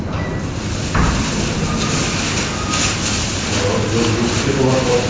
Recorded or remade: recorded